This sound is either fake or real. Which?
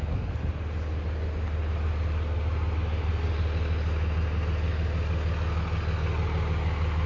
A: real